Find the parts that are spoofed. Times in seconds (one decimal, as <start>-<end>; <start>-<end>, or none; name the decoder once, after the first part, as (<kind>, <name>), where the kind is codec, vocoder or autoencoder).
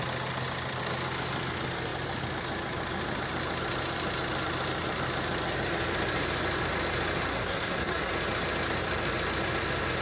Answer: 7.3-8.1 (codec, SNAC)